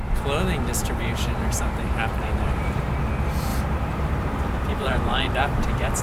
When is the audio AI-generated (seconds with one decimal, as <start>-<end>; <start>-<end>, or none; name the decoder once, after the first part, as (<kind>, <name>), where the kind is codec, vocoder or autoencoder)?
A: 0.8-2.8 (vocoder, BigVGAN v2); 3.5-6.0